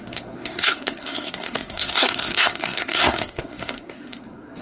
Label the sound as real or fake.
fake